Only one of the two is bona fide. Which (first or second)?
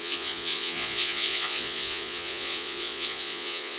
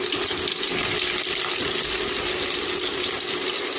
second